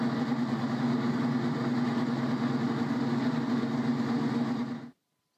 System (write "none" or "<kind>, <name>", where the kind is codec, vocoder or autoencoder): none